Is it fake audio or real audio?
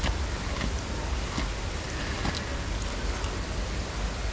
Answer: real